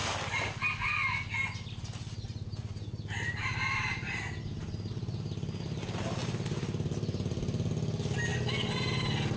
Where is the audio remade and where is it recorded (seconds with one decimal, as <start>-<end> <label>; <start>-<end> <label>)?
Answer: 0.0-9.4 recorded